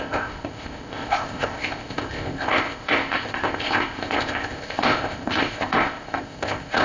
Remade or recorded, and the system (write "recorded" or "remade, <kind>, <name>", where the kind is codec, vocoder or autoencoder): remade, codec, ZipCodec